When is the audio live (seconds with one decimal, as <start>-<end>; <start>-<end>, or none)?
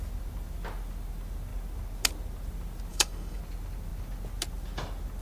0.0-2.9; 3.4-5.2